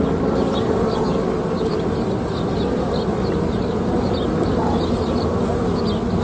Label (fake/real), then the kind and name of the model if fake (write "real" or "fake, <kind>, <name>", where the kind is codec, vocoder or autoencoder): real